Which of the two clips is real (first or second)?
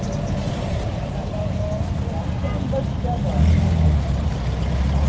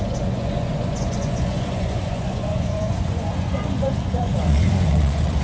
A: first